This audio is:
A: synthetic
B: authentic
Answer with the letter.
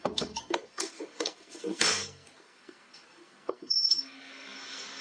A